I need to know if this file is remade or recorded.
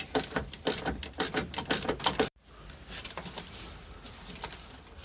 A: remade